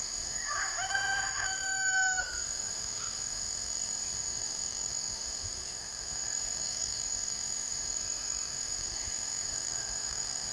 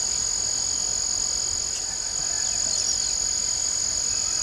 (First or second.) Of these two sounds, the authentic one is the second